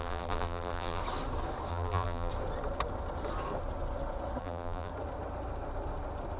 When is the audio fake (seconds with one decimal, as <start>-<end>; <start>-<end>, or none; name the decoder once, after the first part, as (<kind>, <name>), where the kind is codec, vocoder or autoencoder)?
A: 0.0-1.0 (vocoder, BigVGAN v2); 1.7-2.3; 4.4-4.9